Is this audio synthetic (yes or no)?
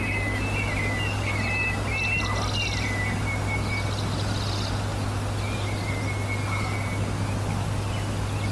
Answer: no